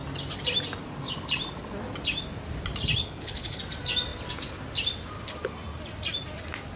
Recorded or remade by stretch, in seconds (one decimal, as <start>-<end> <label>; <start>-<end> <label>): 0.0-3.0 recorded; 3.0-3.6 remade; 3.6-6.8 recorded